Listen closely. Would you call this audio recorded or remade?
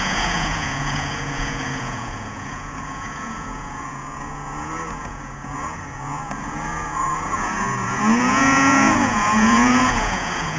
remade